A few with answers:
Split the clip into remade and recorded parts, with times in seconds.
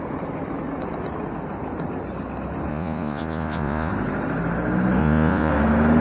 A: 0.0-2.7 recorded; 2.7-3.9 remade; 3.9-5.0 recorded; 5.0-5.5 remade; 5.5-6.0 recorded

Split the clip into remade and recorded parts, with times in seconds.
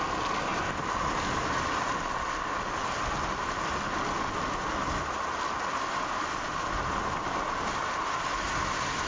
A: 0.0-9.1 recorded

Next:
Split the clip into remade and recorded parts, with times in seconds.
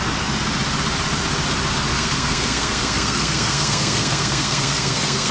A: 0.0-1.9 recorded; 1.9-5.3 remade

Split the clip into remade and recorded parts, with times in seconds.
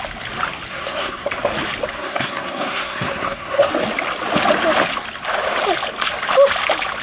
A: 0.0-0.7 recorded; 0.7-1.3 remade; 1.3-1.9 recorded; 1.9-3.7 remade; 3.7-7.0 recorded